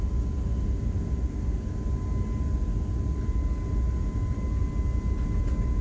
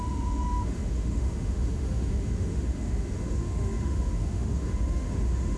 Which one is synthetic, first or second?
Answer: second